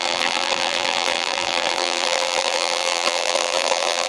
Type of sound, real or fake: fake